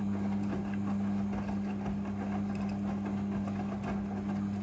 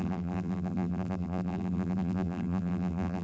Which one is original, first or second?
first